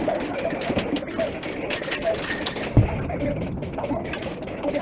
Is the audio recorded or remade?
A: recorded